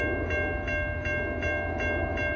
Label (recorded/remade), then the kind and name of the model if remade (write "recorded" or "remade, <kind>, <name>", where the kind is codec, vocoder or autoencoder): recorded